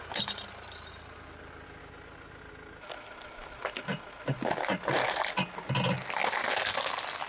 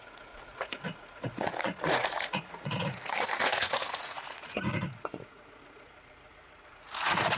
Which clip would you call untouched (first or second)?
first